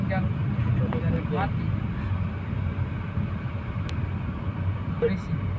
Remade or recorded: recorded